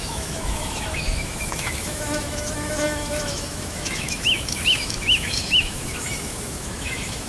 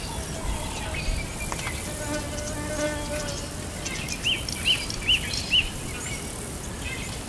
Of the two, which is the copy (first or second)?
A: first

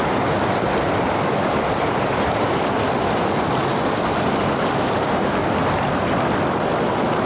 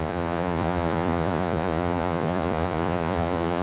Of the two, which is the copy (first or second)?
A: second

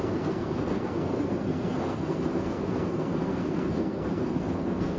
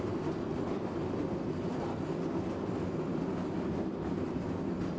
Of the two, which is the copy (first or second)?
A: first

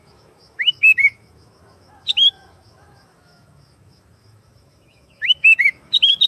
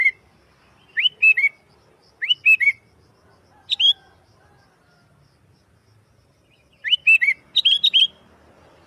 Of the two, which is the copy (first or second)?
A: first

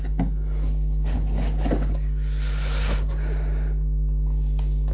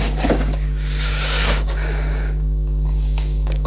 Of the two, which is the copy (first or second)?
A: second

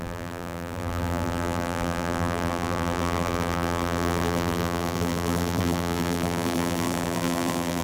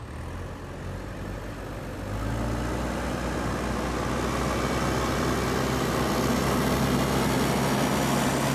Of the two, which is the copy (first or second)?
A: first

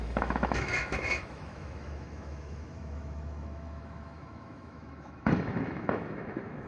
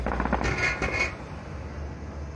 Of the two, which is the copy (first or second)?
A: first